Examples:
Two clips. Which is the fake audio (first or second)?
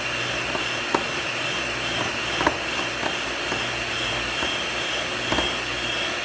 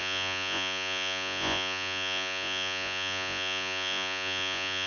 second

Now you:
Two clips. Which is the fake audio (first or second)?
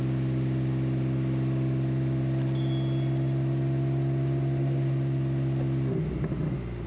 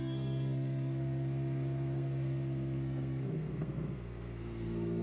second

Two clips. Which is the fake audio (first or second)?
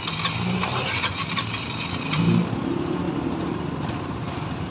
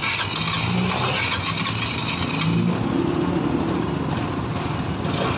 first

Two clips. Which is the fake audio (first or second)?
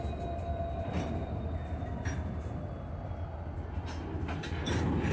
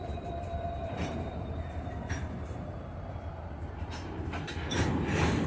second